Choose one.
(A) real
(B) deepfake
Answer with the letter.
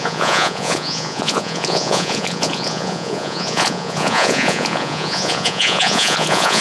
B